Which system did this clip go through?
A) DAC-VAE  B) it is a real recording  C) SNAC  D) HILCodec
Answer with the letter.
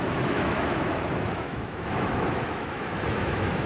A